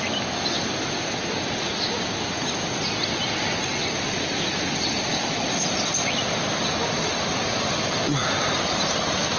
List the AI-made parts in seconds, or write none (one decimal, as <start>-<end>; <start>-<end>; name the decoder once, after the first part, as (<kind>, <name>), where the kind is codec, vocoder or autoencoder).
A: 8.1-8.9 (vocoder, BigVGAN v2)